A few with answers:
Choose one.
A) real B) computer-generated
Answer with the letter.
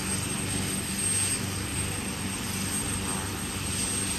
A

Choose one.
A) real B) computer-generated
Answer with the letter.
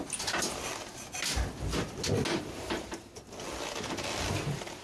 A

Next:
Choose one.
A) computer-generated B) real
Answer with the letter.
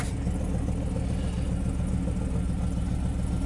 B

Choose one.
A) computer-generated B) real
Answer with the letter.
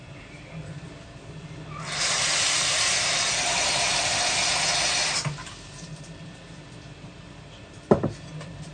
A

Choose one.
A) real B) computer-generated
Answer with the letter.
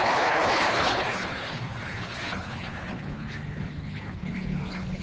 B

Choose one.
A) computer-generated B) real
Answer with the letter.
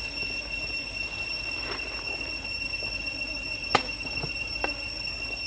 B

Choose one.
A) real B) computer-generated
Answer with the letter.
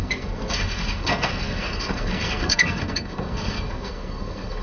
B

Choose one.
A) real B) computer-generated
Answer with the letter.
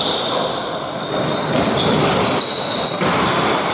A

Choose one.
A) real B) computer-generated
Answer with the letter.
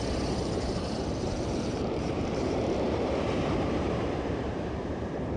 B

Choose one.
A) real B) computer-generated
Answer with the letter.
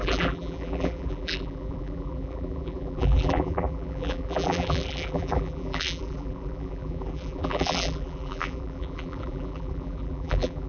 B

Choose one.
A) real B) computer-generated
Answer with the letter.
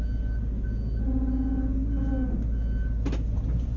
A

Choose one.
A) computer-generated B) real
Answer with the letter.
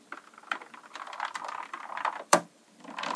A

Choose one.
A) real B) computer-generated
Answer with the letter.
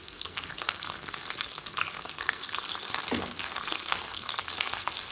B